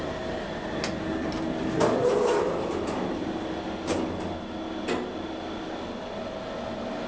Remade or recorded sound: recorded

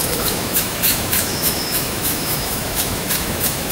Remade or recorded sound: remade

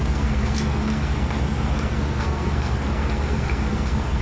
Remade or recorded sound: remade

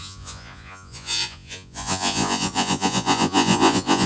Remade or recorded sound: remade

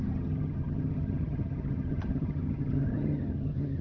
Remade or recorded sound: remade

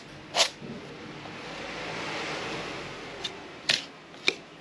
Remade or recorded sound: recorded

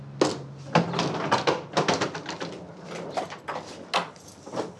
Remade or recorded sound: recorded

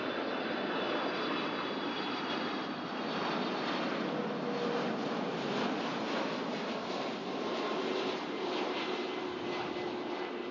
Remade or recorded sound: recorded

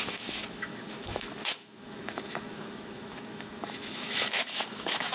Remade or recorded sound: remade